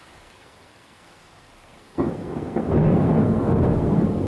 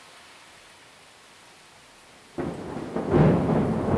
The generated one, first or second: first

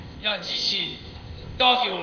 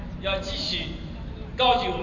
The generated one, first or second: first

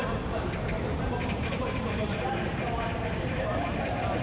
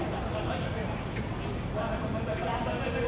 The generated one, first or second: first